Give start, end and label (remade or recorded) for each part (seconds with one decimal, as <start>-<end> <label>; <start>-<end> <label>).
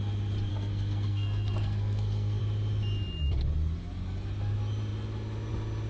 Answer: 0.0-0.5 recorded; 0.5-2.4 remade; 2.4-5.9 recorded